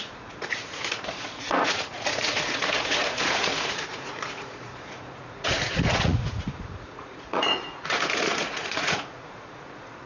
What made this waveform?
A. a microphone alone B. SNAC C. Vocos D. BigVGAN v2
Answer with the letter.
C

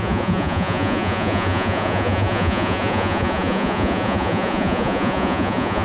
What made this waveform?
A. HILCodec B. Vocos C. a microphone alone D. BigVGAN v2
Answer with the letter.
B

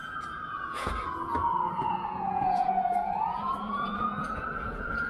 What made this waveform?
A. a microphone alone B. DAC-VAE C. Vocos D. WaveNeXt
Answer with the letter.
C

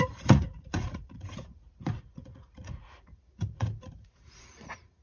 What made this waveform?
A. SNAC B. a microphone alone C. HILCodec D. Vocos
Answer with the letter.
D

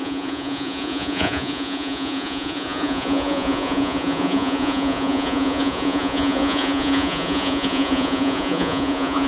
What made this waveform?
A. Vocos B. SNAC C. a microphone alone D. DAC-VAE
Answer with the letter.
A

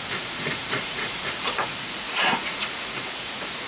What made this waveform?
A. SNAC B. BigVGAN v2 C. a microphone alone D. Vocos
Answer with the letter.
D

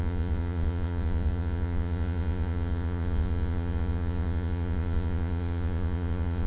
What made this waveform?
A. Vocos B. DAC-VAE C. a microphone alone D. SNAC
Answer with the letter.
A